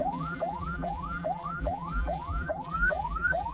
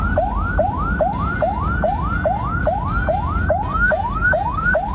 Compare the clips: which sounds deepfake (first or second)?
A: first